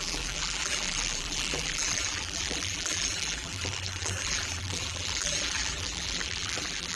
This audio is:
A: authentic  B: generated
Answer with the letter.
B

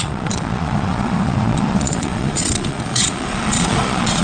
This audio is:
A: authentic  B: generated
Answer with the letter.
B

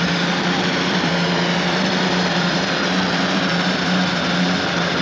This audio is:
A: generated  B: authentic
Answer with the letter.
A